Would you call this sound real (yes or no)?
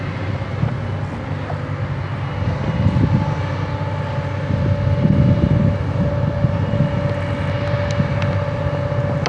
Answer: yes